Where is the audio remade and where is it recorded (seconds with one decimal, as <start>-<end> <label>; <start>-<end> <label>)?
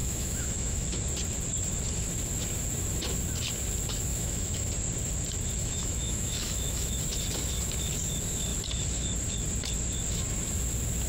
0.0-1.0 remade; 1.0-4.1 recorded; 4.1-4.7 remade; 4.7-5.6 recorded; 5.6-6.9 remade; 6.9-11.1 recorded